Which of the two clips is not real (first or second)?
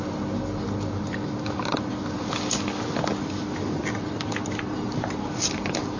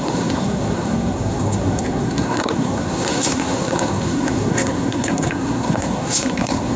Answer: second